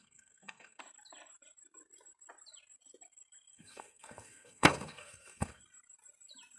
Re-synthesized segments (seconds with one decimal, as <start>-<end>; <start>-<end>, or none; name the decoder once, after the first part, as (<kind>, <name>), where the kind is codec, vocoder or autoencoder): 0.0-0.8 (codec, SNAC); 3.5-5.6